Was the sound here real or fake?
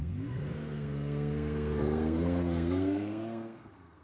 fake